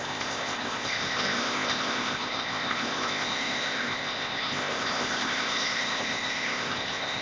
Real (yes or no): no